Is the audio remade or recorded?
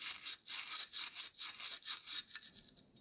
recorded